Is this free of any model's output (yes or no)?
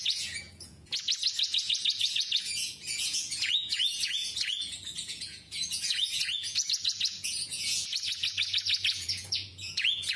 no